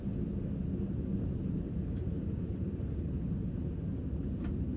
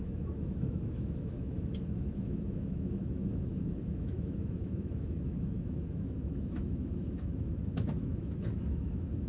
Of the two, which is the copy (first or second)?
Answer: second